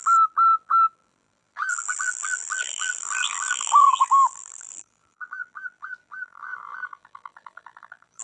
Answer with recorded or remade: remade